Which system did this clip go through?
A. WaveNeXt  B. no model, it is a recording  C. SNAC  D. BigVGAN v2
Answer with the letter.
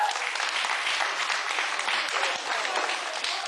B